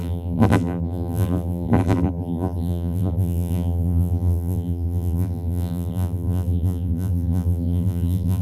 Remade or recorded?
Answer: remade